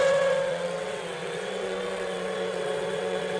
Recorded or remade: remade